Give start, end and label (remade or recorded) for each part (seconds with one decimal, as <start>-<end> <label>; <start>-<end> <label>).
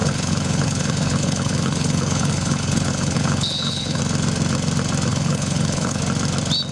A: 0.0-4.0 remade; 4.0-5.1 recorded; 5.1-6.0 remade; 6.0-6.7 recorded